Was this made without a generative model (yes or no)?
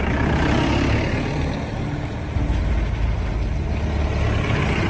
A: yes